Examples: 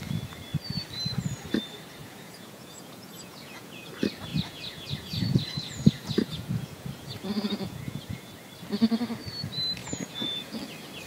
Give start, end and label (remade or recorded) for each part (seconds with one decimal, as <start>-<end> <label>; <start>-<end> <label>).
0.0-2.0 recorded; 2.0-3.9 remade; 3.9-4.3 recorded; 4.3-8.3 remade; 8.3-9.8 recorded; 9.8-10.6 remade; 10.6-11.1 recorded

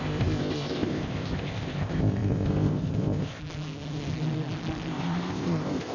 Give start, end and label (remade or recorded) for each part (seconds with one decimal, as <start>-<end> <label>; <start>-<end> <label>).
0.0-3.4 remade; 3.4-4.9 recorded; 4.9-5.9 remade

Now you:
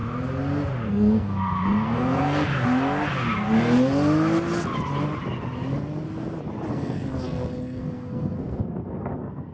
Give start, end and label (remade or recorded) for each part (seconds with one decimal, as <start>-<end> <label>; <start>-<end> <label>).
0.0-0.9 recorded; 0.9-2.5 remade; 2.5-6.7 recorded; 6.7-9.5 remade

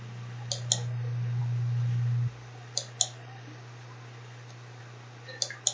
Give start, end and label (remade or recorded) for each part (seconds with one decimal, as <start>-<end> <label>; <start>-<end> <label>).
0.0-5.7 recorded

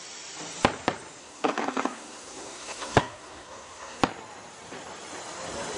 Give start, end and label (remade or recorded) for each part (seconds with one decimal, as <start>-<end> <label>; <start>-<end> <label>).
0.0-1.2 recorded; 1.2-4.0 remade; 4.0-5.8 recorded

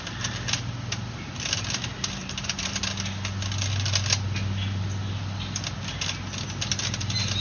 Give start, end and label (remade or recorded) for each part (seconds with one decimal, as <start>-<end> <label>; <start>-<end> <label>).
0.0-2.2 recorded; 2.2-2.8 remade; 2.8-7.4 recorded

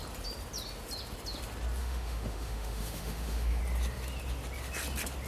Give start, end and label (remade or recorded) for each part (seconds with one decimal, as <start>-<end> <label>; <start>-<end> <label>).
0.0-1.8 recorded; 1.8-3.6 remade; 3.6-5.3 recorded

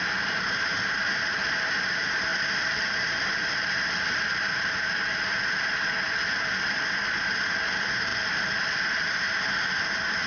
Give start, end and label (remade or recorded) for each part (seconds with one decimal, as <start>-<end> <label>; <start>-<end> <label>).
0.0-2.3 recorded; 2.3-5.2 remade; 5.2-8.1 recorded; 8.1-9.2 remade; 9.2-10.3 recorded